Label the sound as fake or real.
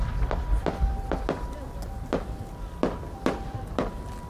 real